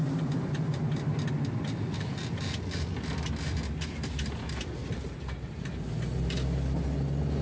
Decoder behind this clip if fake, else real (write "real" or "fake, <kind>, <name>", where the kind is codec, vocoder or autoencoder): real